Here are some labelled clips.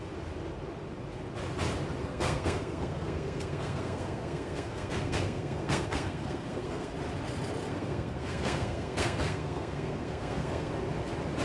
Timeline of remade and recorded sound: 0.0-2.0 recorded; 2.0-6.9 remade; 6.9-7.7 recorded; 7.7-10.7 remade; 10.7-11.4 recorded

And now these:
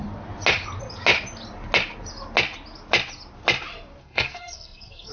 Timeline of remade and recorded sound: 0.0-4.0 recorded; 4.0-5.1 remade

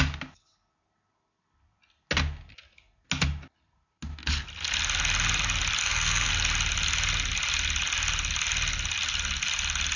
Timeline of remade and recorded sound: 0.0-5.8 recorded; 5.8-6.3 remade; 6.3-10.0 recorded

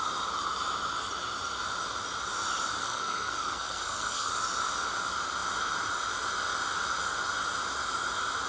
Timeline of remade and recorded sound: 0.0-2.8 recorded; 2.8-4.3 remade; 4.3-8.5 recorded

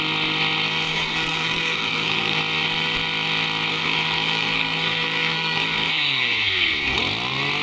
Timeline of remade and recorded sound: 0.0-0.9 recorded; 0.9-2.4 remade; 2.4-3.7 recorded; 3.7-7.0 remade; 7.0-7.6 recorded

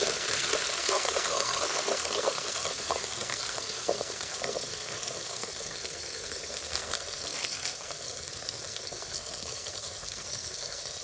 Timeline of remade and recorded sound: 0.0-11.0 remade

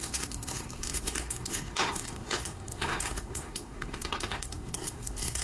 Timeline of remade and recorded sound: 0.0-5.4 remade